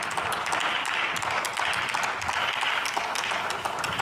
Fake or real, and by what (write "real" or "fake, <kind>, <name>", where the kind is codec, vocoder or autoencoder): real